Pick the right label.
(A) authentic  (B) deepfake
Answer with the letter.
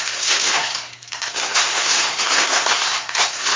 B